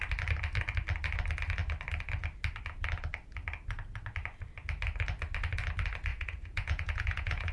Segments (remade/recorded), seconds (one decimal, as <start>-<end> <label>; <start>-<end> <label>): 0.0-6.1 recorded; 6.1-7.5 remade